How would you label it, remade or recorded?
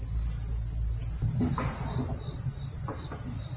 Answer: recorded